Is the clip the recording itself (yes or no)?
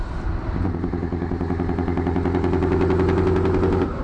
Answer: yes